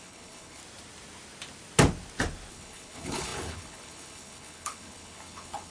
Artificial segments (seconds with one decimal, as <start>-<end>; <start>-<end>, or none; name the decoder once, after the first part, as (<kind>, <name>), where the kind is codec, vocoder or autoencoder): 0.0-0.6 (codec, HILCodec); 2.5-5.7